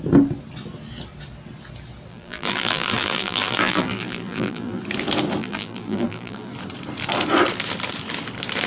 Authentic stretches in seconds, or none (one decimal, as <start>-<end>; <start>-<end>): 0.0-2.1; 4.8-5.4; 6.5-8.7